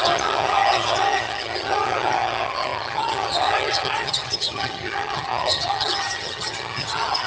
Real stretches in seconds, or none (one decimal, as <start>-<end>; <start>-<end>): none